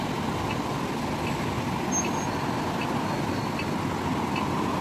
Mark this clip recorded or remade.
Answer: recorded